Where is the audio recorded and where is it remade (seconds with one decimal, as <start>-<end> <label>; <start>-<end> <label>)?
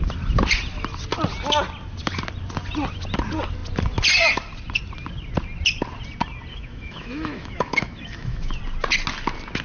0.0-6.5 recorded; 6.5-8.6 remade; 8.6-9.6 recorded